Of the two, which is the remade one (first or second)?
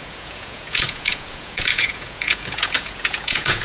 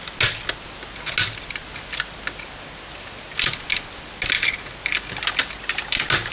first